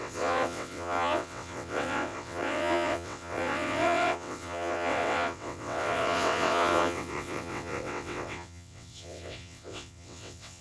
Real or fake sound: fake